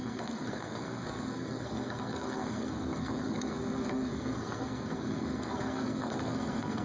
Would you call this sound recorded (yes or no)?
no